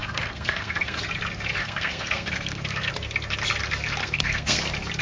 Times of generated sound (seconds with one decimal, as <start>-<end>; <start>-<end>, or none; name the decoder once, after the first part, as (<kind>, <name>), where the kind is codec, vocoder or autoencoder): 0.0-1.0 (codec, SNAC); 1.6-2.9; 4.0-4.6